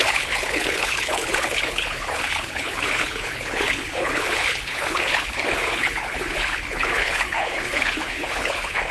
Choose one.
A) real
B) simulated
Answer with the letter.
B